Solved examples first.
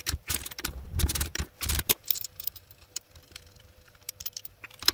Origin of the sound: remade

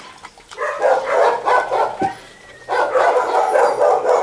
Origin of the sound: recorded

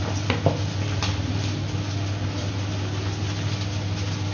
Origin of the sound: recorded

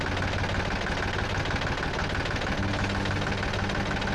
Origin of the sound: recorded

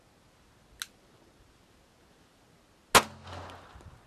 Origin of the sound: recorded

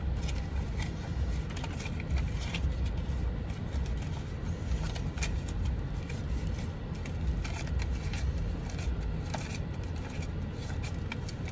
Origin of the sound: recorded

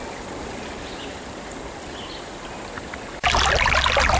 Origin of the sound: recorded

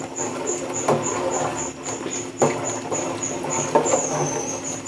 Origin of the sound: recorded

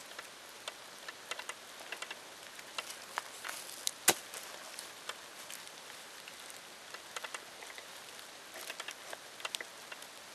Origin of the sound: recorded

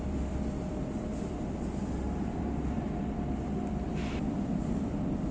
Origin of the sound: remade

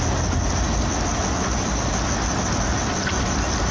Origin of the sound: recorded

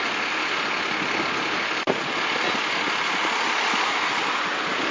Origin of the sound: recorded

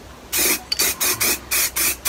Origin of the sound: recorded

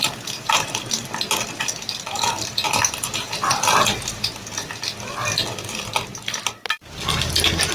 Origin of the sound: recorded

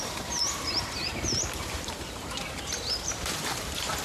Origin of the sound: remade